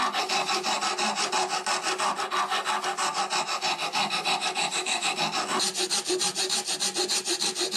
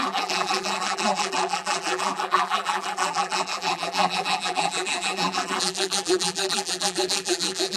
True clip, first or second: first